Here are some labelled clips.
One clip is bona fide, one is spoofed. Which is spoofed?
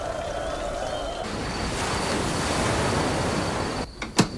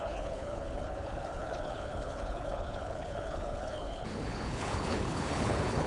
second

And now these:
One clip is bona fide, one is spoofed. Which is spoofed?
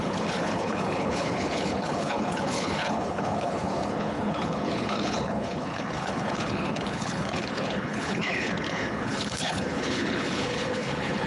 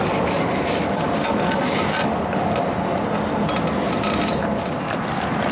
first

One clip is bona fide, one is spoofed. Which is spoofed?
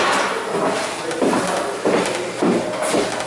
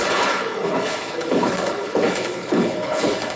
second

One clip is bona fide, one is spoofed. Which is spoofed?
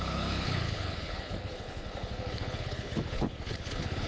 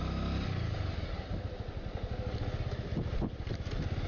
first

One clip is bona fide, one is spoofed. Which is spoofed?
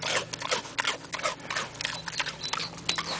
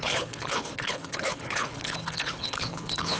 second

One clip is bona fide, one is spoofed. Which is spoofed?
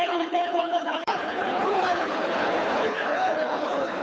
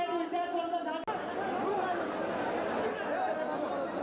first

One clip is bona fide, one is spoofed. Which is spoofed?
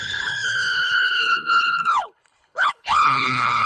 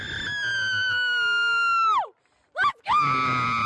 first